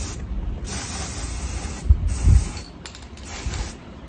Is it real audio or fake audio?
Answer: real